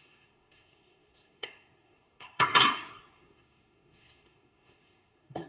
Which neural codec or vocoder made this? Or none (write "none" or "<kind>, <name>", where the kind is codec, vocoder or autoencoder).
codec, SNAC